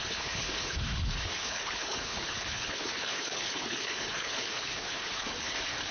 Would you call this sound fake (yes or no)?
yes